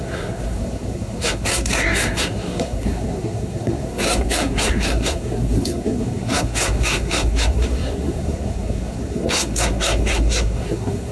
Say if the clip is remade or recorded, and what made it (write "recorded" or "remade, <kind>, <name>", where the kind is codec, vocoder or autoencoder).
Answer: remade, codec, SNAC